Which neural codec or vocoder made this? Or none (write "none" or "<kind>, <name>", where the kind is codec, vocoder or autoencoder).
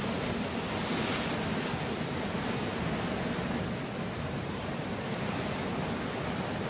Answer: none